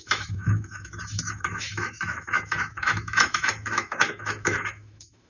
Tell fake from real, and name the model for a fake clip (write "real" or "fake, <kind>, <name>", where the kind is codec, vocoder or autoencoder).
fake, autoencoder, DAC-VAE